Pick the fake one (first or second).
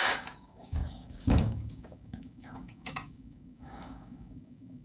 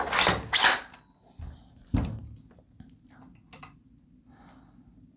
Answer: first